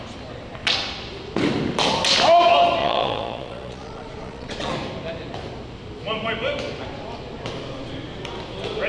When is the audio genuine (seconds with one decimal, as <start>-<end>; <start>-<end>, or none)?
0.0-2.8; 4.7-8.9